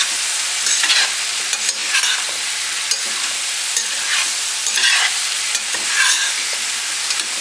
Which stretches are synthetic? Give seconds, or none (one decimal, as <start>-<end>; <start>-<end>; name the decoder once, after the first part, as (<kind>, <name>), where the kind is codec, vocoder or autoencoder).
none